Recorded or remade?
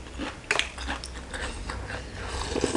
recorded